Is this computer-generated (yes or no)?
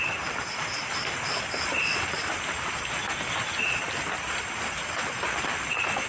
no